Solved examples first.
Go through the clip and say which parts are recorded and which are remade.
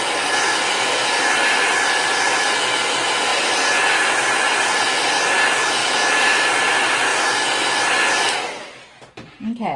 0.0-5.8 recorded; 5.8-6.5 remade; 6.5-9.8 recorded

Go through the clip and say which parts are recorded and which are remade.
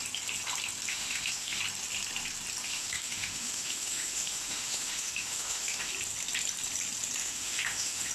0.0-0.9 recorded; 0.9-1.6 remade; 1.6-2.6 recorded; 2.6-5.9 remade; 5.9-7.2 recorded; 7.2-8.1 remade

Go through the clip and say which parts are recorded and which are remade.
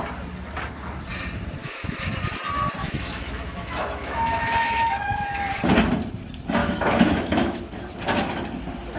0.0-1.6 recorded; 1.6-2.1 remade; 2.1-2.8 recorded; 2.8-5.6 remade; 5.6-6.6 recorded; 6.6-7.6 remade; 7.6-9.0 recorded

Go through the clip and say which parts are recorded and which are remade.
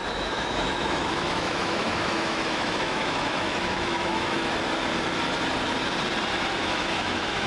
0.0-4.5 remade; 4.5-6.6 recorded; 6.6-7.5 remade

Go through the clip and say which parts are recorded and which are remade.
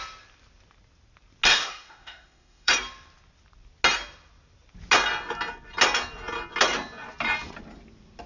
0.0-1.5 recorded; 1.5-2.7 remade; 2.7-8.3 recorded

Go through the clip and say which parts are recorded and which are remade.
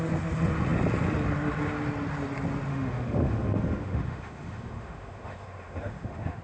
0.0-2.7 recorded; 2.7-6.4 remade